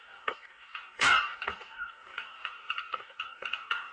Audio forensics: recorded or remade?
remade